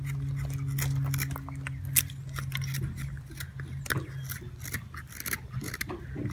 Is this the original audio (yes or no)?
yes